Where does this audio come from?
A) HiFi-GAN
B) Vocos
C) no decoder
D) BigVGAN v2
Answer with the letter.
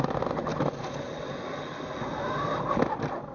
C